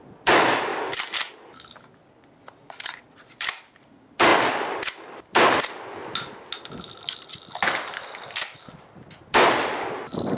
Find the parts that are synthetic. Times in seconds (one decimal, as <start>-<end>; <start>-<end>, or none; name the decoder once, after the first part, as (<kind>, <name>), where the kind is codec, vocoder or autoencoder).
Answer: 2.6-3.3 (vocoder, Vocos)